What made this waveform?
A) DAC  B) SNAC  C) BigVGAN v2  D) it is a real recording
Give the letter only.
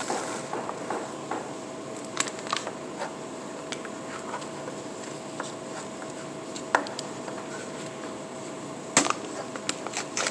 D